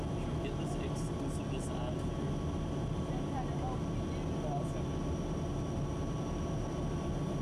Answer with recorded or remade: recorded